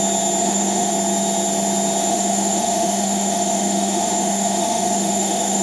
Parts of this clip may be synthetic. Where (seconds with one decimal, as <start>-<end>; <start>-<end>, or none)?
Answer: 0.4-0.9; 2.1-5.6